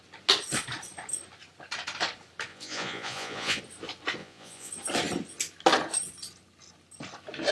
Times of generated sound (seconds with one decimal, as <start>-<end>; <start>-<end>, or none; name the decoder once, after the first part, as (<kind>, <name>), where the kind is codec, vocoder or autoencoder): 2.5-3.6 (vocoder, Vocos); 4.2-4.7